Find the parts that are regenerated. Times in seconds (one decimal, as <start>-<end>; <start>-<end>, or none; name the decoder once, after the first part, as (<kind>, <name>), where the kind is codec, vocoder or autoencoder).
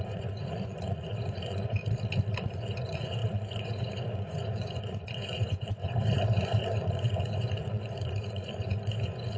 0.0-1.8 (vocoder, Vocos); 2.4-9.4